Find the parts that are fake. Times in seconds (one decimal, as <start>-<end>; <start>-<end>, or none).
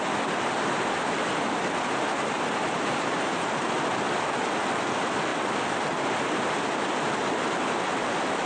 none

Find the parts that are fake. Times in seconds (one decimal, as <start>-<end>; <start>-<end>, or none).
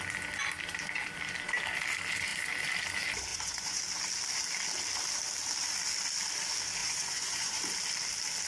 3.3-3.8; 6.8-7.6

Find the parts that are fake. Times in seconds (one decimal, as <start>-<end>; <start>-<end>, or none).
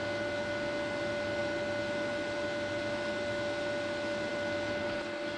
none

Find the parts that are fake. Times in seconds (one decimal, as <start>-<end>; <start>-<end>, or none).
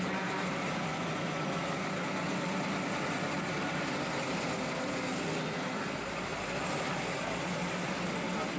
0.9-1.4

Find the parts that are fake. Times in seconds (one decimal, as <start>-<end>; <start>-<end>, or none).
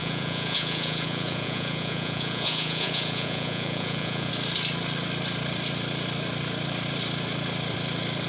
0.0-4.3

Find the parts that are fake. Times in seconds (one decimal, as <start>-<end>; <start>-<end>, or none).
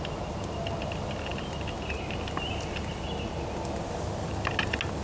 none